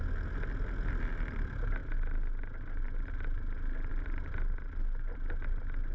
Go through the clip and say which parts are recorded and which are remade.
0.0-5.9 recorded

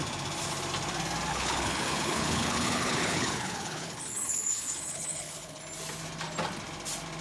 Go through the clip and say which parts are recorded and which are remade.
0.0-1.3 recorded; 1.3-5.6 remade; 5.6-7.2 recorded

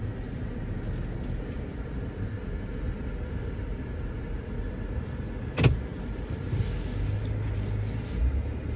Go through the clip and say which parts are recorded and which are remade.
0.0-8.8 recorded

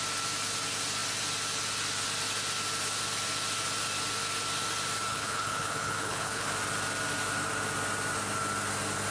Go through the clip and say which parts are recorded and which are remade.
0.0-5.1 recorded; 5.1-6.5 remade; 6.5-9.1 recorded

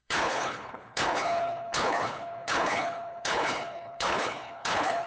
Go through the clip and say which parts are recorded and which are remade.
0.0-5.1 remade